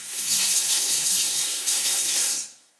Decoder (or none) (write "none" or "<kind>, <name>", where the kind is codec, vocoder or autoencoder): codec, SNAC